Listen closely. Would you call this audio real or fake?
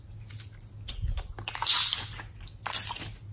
real